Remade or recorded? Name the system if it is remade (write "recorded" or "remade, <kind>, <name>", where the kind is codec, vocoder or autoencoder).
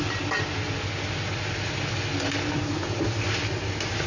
recorded